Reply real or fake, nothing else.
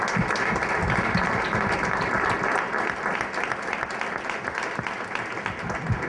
real